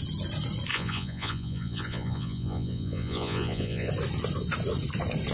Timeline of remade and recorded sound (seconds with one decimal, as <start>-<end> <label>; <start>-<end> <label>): 0.0-0.7 recorded; 0.7-3.9 remade; 3.9-5.3 recorded